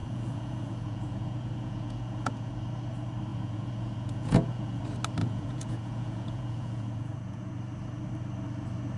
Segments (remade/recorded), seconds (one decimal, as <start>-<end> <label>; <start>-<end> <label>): 0.0-2.5 remade; 2.5-3.3 recorded; 3.3-4.8 remade; 4.8-5.2 recorded; 5.2-7.5 remade; 7.5-9.0 recorded